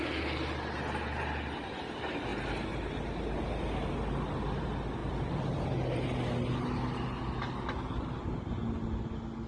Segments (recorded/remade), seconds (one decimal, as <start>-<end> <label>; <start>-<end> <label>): 0.0-9.5 recorded